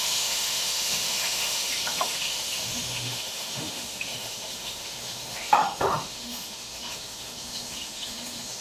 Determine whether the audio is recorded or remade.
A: remade